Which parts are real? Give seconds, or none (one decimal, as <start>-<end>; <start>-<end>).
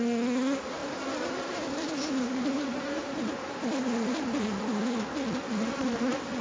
0.0-0.8; 4.6-6.4